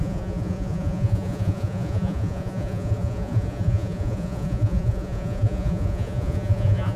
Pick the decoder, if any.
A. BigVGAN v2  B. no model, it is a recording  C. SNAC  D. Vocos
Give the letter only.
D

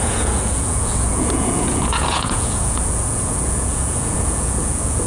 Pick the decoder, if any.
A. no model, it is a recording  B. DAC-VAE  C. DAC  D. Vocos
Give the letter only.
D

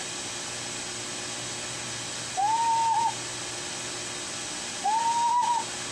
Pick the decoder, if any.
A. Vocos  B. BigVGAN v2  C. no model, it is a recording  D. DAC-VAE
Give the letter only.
C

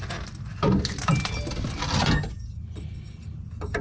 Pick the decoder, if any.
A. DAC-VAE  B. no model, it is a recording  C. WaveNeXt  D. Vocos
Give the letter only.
B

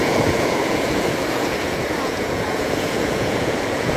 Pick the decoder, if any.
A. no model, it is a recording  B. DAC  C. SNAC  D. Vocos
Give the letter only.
D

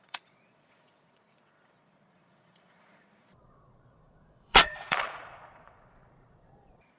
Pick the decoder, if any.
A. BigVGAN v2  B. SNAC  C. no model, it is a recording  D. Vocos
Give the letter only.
D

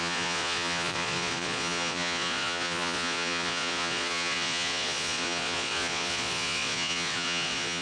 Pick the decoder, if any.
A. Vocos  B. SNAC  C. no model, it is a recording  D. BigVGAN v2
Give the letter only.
A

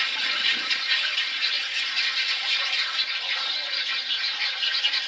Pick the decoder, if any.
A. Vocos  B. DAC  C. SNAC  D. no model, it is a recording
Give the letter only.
A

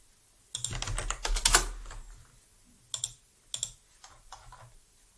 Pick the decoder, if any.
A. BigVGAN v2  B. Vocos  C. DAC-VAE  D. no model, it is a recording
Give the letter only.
D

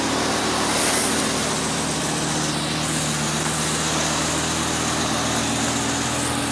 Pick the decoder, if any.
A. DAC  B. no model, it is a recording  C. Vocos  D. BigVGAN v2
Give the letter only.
B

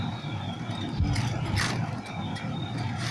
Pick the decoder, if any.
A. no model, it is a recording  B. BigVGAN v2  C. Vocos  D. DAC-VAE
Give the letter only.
A